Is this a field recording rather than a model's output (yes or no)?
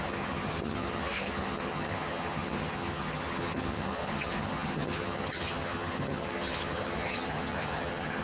no